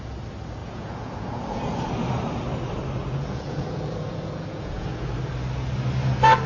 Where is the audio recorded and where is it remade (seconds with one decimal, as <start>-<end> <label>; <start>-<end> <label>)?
0.0-0.6 recorded; 0.6-1.9 remade; 1.9-3.0 recorded; 3.0-5.3 remade; 5.3-6.5 recorded